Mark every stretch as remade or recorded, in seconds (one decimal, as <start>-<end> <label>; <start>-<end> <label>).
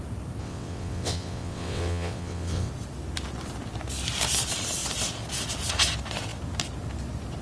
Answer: 0.0-0.4 recorded; 0.4-2.7 remade; 2.7-7.4 recorded